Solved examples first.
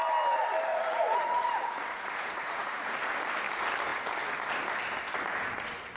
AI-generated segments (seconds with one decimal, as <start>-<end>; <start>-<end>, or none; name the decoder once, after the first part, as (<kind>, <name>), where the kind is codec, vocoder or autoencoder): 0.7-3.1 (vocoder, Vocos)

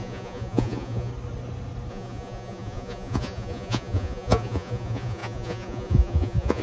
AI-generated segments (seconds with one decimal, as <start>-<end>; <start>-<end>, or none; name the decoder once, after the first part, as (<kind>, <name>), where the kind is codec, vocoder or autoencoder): 0.0-1.1 (vocoder, Vocos); 1.9-6.6

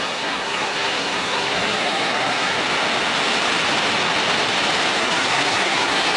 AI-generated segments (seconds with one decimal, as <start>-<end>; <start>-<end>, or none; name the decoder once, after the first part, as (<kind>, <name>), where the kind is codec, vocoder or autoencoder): 0.0-2.6 (codec, SNAC); 5.0-6.2

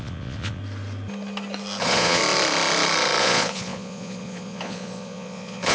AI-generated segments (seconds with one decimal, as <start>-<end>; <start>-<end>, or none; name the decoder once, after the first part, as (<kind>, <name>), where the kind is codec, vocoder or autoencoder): 0.0-0.6 (vocoder, Vocos); 1.8-2.2; 3.2-5.7

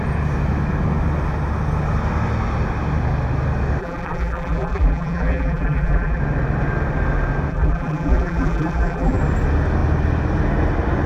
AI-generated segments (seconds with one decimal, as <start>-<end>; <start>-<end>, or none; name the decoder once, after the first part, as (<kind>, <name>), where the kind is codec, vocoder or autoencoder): 3.8-6.2 (vocoder, BigVGAN v2); 7.5-9.2

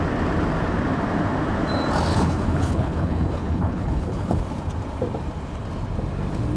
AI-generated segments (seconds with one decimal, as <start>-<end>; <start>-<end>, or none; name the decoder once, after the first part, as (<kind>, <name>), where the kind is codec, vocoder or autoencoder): 2.1-4.4 (codec, HILCodec)